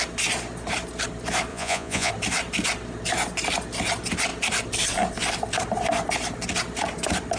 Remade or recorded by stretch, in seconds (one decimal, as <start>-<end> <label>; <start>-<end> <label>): 0.0-1.5 recorded; 1.5-2.1 remade; 2.1-7.4 recorded